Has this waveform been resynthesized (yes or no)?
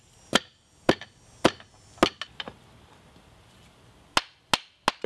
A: no